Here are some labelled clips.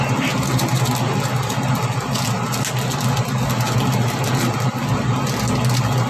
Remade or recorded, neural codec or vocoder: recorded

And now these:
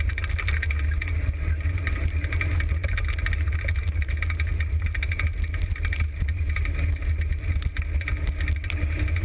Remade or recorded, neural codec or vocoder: recorded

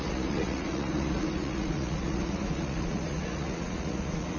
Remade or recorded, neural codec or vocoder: remade, vocoder, Vocos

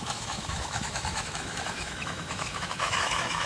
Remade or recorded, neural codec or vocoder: remade, autoencoder, DAC-VAE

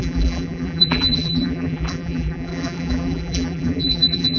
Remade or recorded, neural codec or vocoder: remade, vocoder, BigVGAN v2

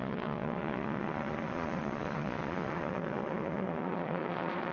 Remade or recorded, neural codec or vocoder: remade, vocoder, Vocos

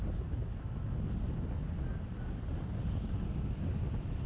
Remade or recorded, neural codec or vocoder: recorded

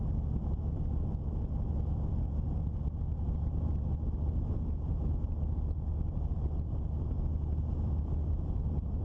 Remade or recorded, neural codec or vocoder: recorded